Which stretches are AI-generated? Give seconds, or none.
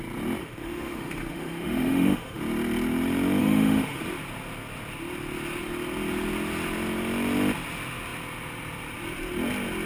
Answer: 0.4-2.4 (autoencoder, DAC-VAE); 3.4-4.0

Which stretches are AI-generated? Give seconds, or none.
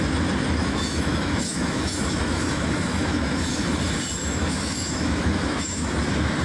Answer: 0.6-3.6 (autoencoder, DAC-VAE); 4.2-5.9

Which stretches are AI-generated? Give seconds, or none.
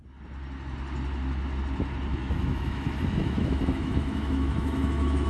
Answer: 2.1-5.3 (autoencoder, DAC-VAE)